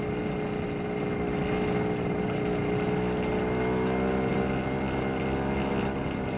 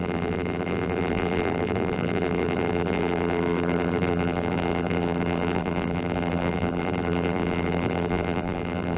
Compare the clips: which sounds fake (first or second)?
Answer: second